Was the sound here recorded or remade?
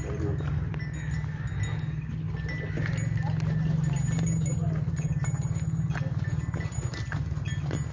recorded